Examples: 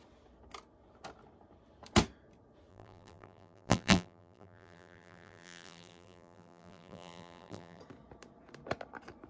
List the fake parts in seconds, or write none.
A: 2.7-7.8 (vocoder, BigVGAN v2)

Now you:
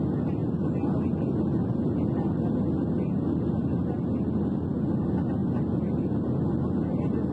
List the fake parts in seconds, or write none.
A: none

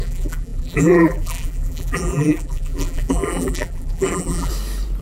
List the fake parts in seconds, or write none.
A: 0.0-4.5 (vocoder, BigVGAN v2)

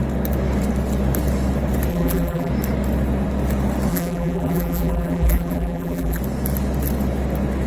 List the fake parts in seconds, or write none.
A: 1.9-2.5 (vocoder, BigVGAN v2); 3.9-6.2

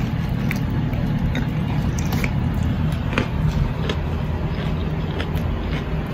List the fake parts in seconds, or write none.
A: 0.9-2.7 (vocoder, BigVGAN v2)